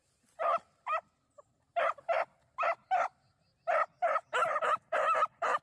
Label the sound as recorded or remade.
recorded